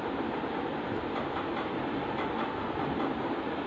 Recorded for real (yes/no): yes